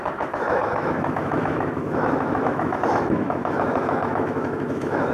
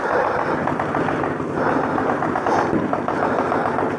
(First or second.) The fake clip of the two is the first